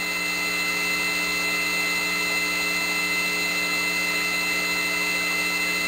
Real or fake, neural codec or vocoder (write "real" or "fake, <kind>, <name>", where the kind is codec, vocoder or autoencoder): real